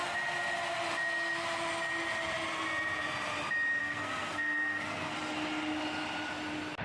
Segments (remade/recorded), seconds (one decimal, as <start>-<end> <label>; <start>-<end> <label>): 0.0-3.8 recorded; 3.8-5.1 remade; 5.1-6.8 recorded